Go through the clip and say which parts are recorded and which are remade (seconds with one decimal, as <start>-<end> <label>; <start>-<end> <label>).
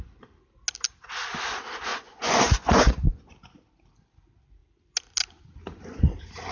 0.0-1.9 recorded; 1.9-3.2 remade; 3.2-6.5 recorded